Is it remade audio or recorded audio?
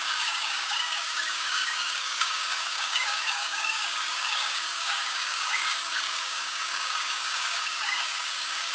remade